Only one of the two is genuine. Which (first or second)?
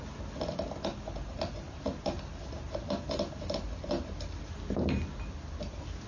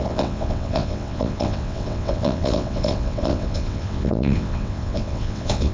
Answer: first